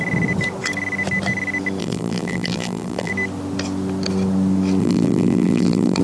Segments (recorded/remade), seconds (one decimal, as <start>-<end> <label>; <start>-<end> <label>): 0.0-1.8 recorded; 1.8-3.1 remade; 3.1-4.8 recorded; 4.8-6.0 remade